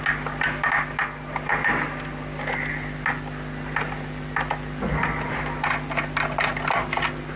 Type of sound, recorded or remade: recorded